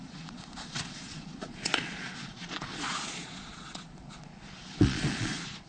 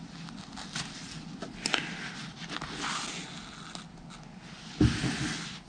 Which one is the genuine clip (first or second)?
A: second